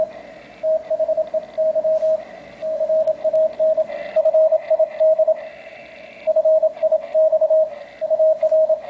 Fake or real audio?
real